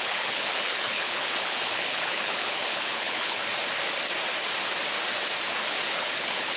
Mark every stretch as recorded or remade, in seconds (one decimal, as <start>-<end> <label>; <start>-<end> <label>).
0.0-3.5 remade; 3.5-5.5 recorded; 5.5-6.6 remade